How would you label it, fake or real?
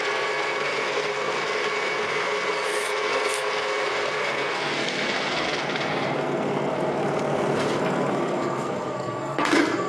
fake